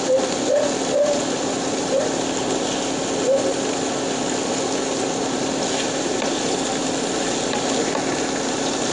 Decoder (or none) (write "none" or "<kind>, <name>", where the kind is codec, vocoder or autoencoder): none